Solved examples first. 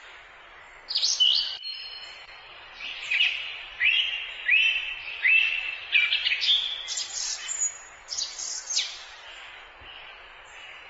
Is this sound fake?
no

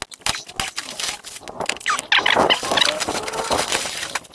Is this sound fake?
no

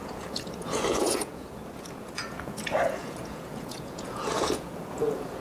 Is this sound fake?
yes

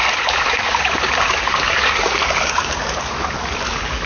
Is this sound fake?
yes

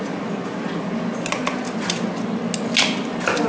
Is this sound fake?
no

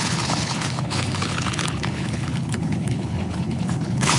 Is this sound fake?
yes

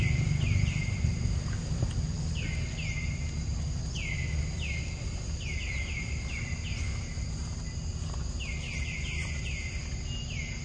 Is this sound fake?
no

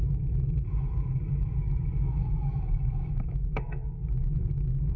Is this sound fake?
yes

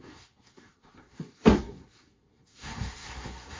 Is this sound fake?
yes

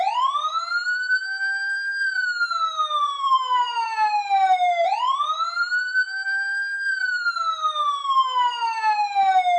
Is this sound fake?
yes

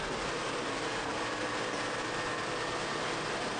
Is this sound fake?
no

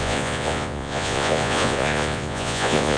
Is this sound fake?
yes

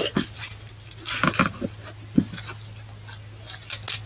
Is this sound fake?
no